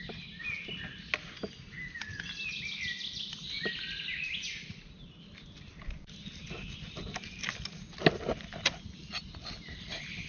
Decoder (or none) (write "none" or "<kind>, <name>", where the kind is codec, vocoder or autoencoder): none